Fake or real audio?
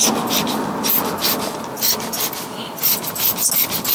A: real